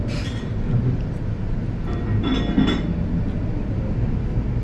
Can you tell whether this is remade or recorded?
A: recorded